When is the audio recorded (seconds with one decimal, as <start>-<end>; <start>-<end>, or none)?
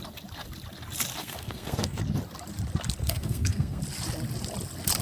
0.0-1.2; 2.0-3.0; 3.8-5.0